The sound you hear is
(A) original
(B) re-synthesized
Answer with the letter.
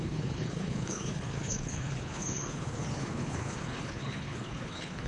B